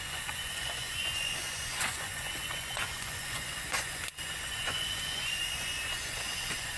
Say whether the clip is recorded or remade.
remade